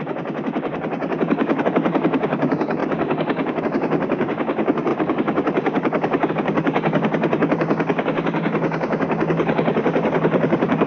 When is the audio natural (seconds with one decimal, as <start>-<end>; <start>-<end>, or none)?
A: none